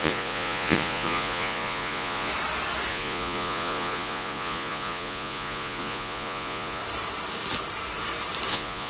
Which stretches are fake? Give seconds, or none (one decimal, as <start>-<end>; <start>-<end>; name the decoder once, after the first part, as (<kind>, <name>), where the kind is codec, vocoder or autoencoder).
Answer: 0.0-2.3 (vocoder, Vocos); 2.9-6.8; 8.5-8.9